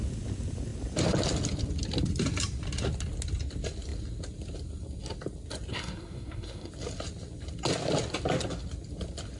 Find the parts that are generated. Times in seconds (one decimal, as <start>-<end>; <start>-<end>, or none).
5.7-6.7